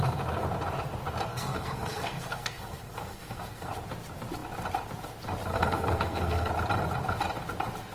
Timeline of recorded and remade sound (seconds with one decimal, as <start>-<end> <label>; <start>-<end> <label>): 0.0-1.3 recorded; 1.3-3.7 remade; 3.7-5.5 recorded; 5.5-6.5 remade; 6.5-7.9 recorded